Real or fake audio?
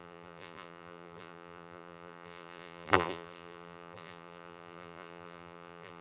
fake